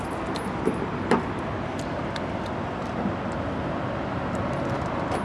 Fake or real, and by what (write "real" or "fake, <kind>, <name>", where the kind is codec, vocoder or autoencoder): real